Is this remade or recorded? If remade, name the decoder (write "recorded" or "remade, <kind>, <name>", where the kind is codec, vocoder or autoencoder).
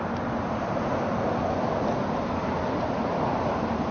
recorded